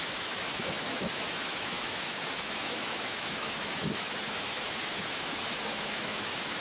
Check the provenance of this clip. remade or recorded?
remade